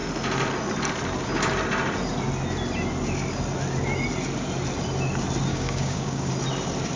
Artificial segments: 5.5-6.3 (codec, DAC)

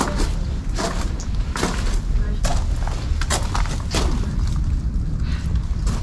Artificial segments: none

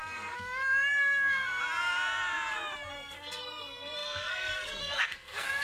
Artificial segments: 0.0-1.6 (codec, SNAC); 2.9-5.6

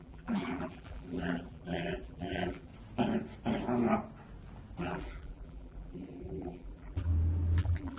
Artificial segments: 0.0-2.7 (vocoder, BigVGAN v2); 4.8-7.1; 7.6-8.0

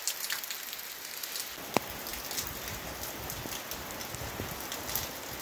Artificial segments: none

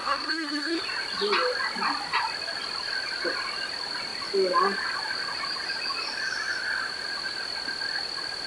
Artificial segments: 0.0-0.8 (codec, SNAC)